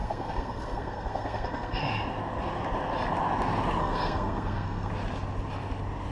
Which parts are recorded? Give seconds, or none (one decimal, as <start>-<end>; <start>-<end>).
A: 1.8-3.8; 4.9-6.1